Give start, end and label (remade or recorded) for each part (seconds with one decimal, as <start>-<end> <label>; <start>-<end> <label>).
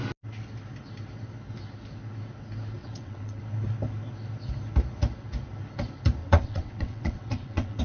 0.0-2.8 recorded; 2.8-3.4 remade; 3.4-6.2 recorded; 6.2-7.8 remade